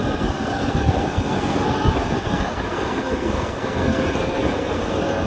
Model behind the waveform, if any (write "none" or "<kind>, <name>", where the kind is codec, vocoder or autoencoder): codec, SNAC